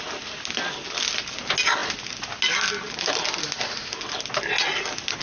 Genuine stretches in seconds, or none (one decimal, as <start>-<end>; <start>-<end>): 0.0-5.2